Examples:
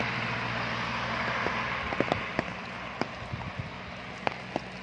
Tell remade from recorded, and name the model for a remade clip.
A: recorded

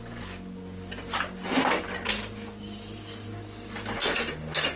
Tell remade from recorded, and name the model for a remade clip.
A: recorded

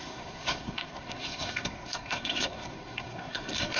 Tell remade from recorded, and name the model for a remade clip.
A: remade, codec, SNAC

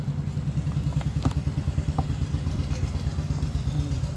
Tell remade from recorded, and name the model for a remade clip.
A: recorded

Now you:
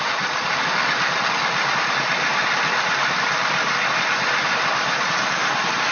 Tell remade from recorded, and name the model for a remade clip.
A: recorded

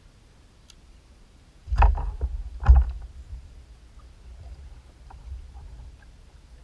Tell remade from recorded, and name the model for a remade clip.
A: recorded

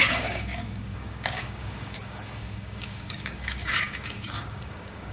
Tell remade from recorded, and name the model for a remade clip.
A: remade, codec, DAC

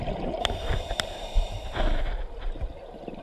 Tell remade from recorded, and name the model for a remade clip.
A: recorded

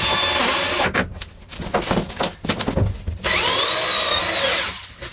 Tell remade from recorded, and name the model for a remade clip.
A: recorded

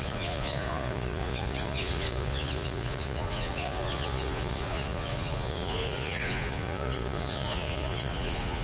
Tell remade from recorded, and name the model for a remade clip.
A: remade, vocoder, Vocos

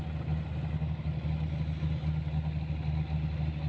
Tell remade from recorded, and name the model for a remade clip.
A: recorded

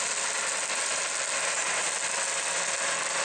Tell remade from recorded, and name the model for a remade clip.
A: recorded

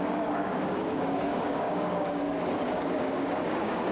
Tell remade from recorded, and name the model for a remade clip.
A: remade, codec, DAC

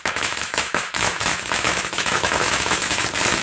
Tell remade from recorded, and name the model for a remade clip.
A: remade, autoencoder, DAC-VAE